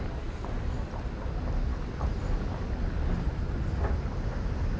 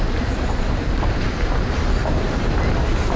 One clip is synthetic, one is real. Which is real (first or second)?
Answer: first